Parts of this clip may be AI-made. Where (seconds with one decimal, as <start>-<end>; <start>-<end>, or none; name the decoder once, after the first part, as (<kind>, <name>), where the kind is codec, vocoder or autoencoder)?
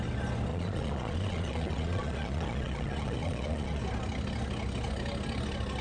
0.5-3.8 (vocoder, Vocos)